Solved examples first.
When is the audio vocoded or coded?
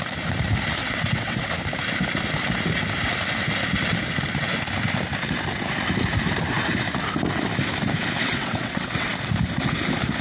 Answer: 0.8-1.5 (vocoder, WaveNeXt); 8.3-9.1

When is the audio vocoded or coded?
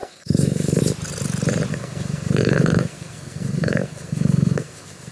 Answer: 0.0-0.8 (codec, SNAC); 1.7-5.1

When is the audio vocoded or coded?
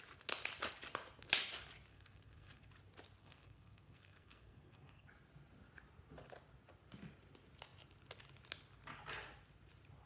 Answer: 1.9-2.7 (codec, SNAC); 3.2-5.1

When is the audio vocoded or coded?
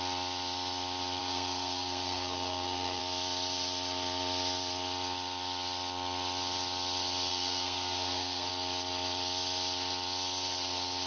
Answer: 1.2-3.0 (codec, SNAC); 7.3-8.5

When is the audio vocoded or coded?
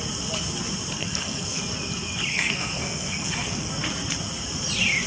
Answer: 1.0-1.6 (codec, SNAC); 2.3-3.7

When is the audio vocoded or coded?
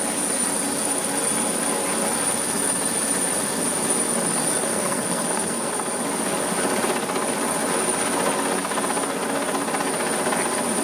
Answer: 4.7-5.7 (codec, SNAC)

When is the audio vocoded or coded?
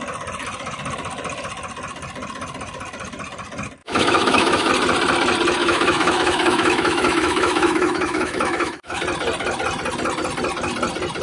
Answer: 3.8-4.7 (autoencoder, DAC-VAE); 5.6-9.0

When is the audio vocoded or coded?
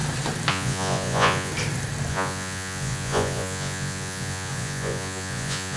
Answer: 0.5-1.5 (vocoder, Vocos); 2.1-5.8